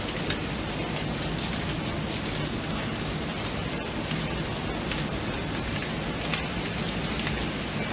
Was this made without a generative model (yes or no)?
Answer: yes